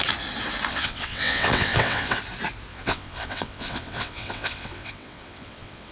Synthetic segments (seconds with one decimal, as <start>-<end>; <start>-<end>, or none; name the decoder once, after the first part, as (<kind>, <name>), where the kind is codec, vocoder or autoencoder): 0.7-2.2 (vocoder, WaveNeXt); 2.7-5.9